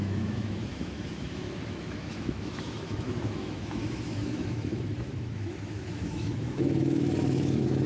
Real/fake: fake